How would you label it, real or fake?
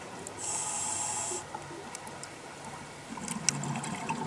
real